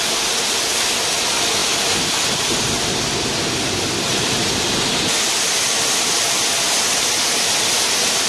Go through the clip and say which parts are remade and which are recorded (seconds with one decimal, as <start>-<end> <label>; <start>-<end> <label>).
0.0-1.6 recorded; 1.6-3.0 remade; 3.0-4.1 recorded; 4.1-6.2 remade; 6.2-8.3 recorded